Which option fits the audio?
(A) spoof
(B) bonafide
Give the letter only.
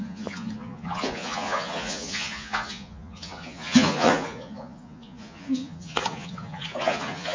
A